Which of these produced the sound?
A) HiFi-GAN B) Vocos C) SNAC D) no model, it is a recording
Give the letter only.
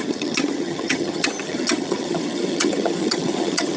A